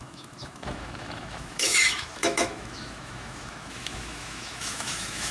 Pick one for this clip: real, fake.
fake